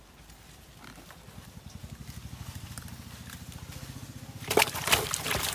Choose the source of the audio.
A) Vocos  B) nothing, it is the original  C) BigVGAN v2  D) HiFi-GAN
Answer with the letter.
B